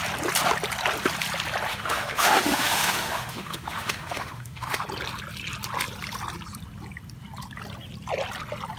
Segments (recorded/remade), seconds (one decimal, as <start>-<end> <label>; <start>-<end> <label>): 0.0-1.7 recorded; 1.7-4.8 remade; 4.8-8.8 recorded